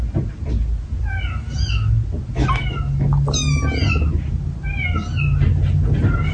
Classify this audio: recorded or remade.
recorded